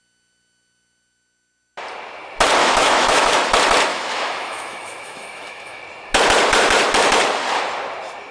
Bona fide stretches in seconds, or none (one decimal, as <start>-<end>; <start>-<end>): 0.0-2.6; 3.3-3.9; 5.8-8.3